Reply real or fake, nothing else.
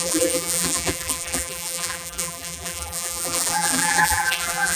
fake